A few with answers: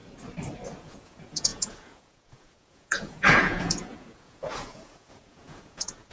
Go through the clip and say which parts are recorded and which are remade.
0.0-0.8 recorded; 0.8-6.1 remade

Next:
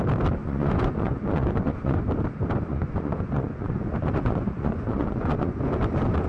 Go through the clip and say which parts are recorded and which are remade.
0.0-0.4 recorded; 0.4-2.0 remade; 2.0-2.7 recorded; 2.7-5.6 remade; 5.6-6.3 recorded

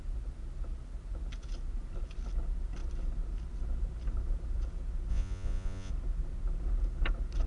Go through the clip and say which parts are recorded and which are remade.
0.0-5.1 recorded; 5.1-5.9 remade; 5.9-7.5 recorded

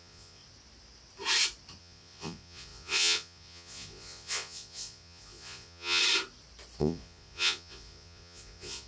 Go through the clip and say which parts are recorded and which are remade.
0.0-0.4 remade; 0.4-1.8 recorded; 1.8-6.0 remade; 6.0-6.8 recorded; 6.8-8.9 remade